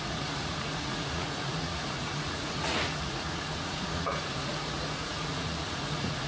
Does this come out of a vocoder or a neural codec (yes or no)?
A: yes